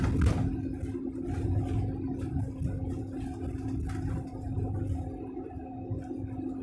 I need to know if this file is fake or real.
real